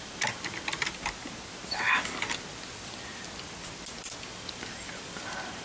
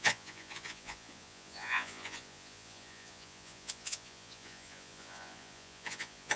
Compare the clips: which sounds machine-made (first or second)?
second